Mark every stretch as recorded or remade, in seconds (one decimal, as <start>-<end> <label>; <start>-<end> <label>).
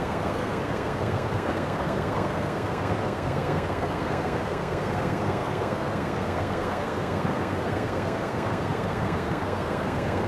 0.0-10.3 remade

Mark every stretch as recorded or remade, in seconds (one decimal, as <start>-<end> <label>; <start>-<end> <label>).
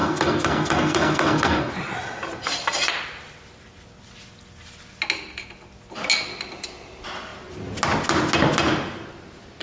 0.0-1.7 remade; 1.7-9.6 recorded